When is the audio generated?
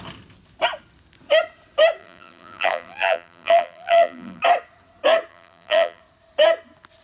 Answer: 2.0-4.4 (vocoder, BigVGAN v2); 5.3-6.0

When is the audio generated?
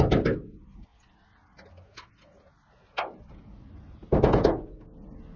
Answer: none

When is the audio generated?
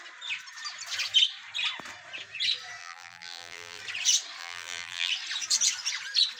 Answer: 2.8-3.8 (vocoder, BigVGAN v2); 4.4-5.1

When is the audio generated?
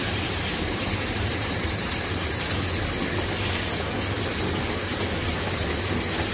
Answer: 0.0-2.0 (vocoder, BigVGAN v2)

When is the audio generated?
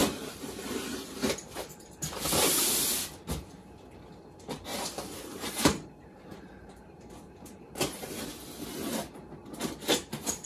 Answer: 0.0-2.5 (vocoder, BigVGAN v2); 4.7-8.3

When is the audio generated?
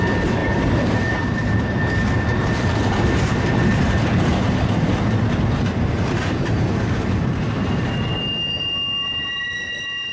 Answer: 0.4-3.5 (vocoder, BigVGAN v2); 6.4-7.9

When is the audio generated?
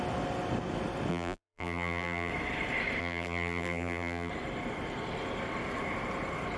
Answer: 1.1-2.3 (vocoder, BigVGAN v2); 3.0-4.3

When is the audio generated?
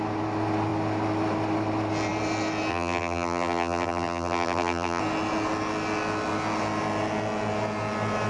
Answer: 2.7-5.0 (vocoder, BigVGAN v2)